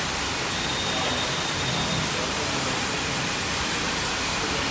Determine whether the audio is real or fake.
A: real